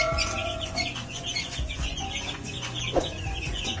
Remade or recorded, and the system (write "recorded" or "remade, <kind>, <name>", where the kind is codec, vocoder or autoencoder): remade, vocoder, Vocos